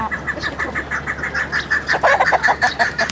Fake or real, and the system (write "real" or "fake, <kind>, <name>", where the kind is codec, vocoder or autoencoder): real